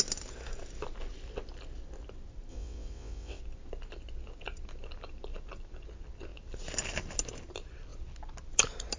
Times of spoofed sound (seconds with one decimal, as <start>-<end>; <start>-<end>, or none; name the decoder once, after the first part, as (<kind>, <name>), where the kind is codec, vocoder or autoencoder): 2.5-3.4 (vocoder, WaveNeXt)